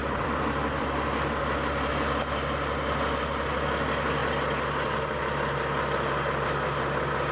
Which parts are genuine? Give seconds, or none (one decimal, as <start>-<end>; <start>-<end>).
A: 1.4-4.2; 5.2-7.3